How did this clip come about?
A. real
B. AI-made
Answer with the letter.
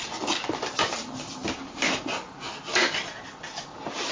A